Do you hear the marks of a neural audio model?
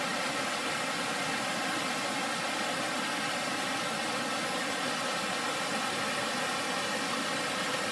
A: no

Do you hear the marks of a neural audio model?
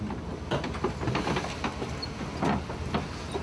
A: no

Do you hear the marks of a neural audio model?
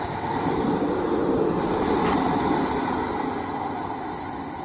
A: no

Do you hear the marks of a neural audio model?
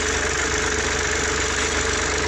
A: no